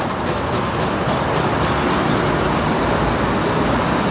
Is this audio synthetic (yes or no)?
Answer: no